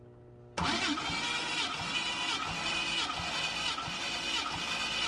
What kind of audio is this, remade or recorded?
recorded